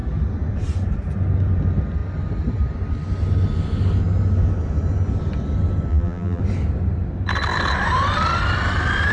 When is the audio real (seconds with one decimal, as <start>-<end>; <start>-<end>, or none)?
0.0-5.9; 6.4-9.1